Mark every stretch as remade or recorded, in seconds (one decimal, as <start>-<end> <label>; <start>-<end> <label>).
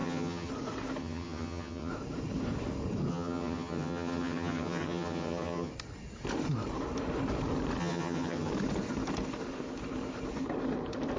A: 0.0-0.5 remade; 0.5-1.0 recorded; 1.0-1.9 remade; 1.9-3.1 recorded; 3.1-5.7 remade; 5.7-7.8 recorded; 7.8-8.5 remade; 8.5-11.2 recorded